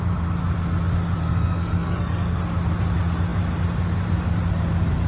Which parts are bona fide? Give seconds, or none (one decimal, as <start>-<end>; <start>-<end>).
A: 0.0-1.2; 2.4-5.1